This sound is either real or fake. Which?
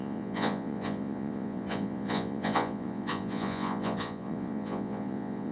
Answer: fake